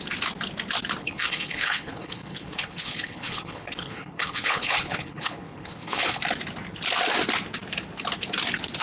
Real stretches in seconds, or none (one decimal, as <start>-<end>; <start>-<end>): 0.0-1.0; 6.2-8.8

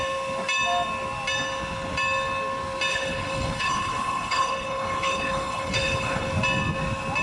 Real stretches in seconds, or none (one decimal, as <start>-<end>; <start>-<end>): 0.0-2.9; 6.3-7.2

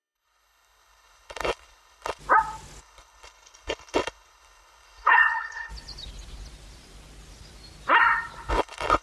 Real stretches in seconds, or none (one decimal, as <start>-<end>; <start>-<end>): 2.2-2.8; 5.7-8.5

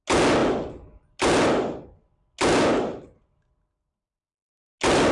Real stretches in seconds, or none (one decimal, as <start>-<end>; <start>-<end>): 0.0-5.1